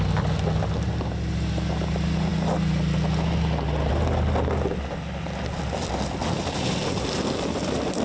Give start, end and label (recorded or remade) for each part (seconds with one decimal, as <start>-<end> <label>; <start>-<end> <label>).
0.0-8.0 recorded